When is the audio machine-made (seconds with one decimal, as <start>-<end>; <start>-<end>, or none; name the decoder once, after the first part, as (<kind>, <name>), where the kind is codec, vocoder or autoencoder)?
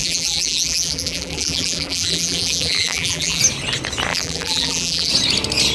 0.0-3.4 (vocoder, BigVGAN v2); 4.1-5.1